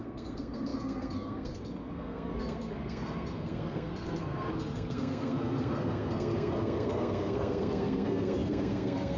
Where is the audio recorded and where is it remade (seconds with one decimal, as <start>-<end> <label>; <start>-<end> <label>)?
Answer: 0.0-9.2 remade